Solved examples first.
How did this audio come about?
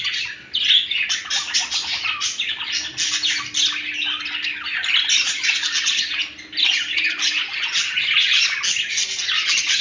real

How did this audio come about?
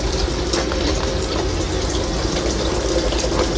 real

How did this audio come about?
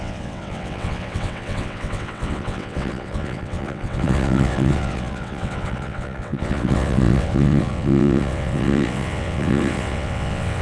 fake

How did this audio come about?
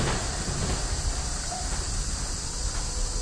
real